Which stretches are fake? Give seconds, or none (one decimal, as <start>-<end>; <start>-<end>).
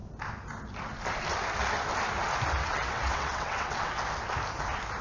2.6-3.9